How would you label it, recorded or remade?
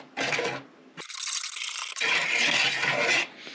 recorded